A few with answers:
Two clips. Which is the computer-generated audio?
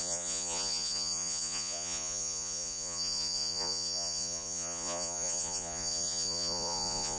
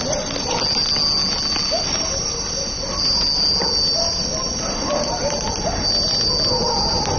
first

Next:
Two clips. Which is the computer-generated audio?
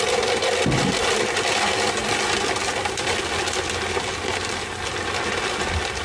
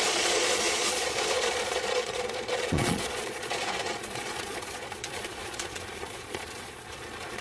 second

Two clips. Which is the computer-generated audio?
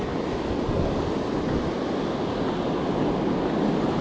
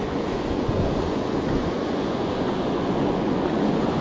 second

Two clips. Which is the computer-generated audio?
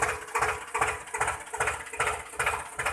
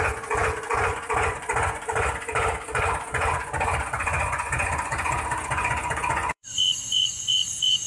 second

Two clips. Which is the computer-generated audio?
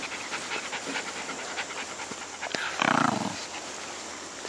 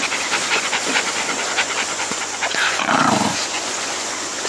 second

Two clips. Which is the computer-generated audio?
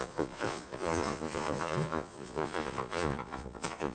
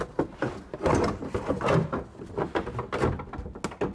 first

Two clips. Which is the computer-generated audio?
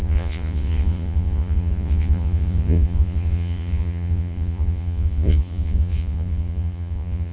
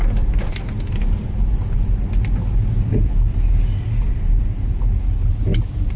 first